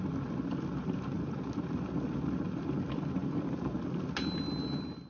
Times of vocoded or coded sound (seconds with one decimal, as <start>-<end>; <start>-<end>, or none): none